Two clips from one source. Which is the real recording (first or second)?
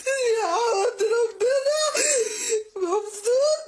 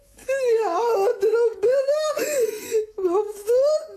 first